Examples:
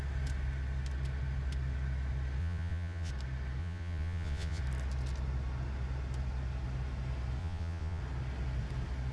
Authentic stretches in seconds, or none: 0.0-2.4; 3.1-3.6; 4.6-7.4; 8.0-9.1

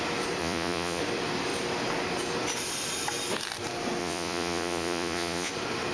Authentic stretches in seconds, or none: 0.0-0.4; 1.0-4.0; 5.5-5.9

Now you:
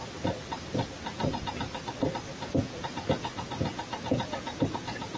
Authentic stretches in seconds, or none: 0.0-2.6

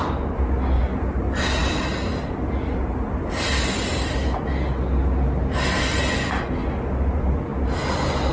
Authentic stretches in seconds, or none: 0.0-8.3

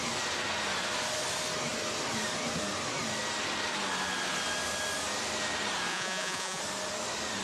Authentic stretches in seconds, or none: 0.0-5.9; 6.6-7.4